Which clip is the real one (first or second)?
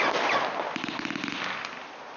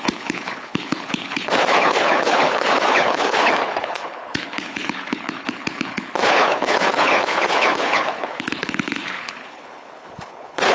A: first